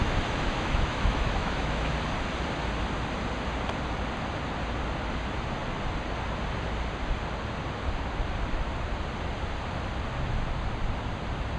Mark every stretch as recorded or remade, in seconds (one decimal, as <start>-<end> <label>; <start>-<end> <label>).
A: 0.0-1.9 remade; 1.9-11.6 recorded